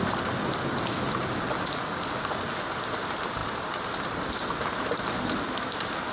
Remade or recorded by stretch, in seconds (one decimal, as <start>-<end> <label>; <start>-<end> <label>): 0.0-6.1 recorded